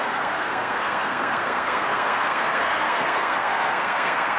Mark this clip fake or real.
fake